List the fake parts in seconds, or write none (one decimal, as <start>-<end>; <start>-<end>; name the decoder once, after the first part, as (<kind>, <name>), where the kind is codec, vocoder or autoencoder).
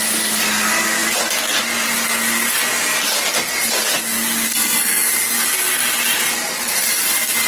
4.5-5.1 (codec, SNAC)